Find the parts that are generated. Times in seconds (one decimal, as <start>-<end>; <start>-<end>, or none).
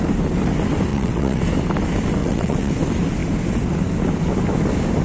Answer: 0.9-1.4; 2.2-2.7